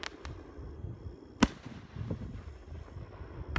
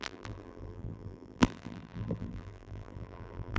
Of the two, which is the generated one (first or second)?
second